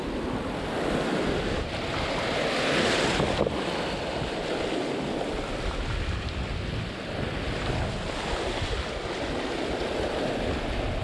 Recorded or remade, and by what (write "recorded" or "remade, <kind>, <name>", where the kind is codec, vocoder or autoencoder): recorded